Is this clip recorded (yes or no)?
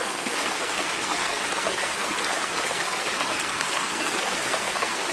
no